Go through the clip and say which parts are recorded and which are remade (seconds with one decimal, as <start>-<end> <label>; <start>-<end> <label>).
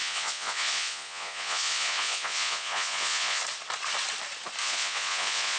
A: 0.0-3.4 remade; 3.4-4.6 recorded; 4.6-5.6 remade